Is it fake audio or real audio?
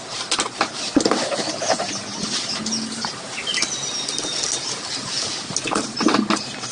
real